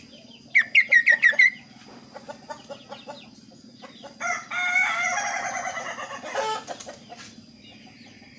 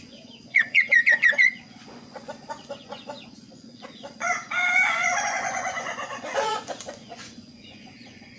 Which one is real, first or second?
first